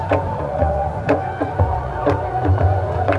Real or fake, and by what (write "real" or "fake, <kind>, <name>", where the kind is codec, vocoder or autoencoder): fake, vocoder, Vocos